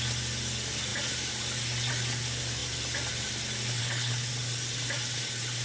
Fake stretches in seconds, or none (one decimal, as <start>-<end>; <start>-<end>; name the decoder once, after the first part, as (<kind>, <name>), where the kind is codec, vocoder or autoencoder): 3.8-4.3 (codec, HILCodec)